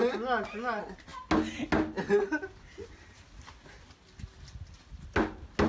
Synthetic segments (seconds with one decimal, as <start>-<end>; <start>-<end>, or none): none